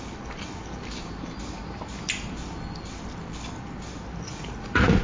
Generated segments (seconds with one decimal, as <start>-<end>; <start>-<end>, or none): 4.3-5.0